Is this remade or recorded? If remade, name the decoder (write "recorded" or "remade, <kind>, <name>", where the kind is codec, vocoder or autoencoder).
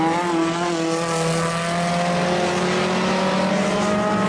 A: recorded